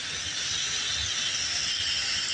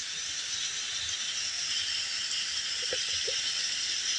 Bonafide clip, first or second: first